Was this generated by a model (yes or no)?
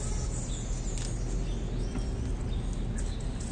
no